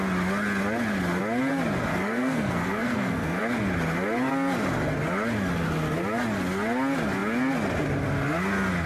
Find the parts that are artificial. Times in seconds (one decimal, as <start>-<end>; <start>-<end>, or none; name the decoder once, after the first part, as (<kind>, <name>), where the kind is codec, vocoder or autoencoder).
1.9-3.4 (codec, SNAC)